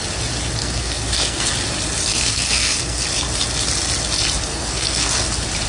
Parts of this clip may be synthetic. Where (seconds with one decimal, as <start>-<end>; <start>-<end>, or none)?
0.6-1.5; 2.1-3.0; 4.5-5.1